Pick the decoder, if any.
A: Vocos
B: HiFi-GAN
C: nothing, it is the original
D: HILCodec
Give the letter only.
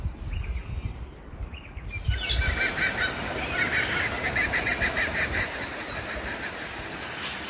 C